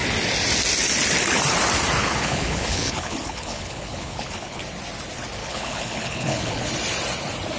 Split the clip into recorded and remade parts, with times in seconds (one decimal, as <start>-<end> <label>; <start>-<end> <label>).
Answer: 0.0-2.0 recorded; 2.0-4.6 remade; 4.6-5.4 recorded; 5.4-6.7 remade; 6.7-7.6 recorded